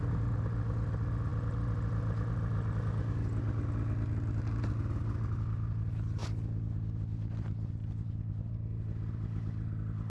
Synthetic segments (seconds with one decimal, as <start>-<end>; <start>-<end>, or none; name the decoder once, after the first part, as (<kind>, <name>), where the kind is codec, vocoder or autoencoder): none